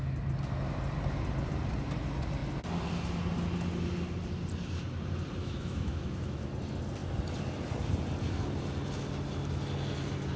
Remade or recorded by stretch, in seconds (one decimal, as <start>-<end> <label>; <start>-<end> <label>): 0.0-5.4 recorded; 5.4-6.5 remade; 6.5-10.4 recorded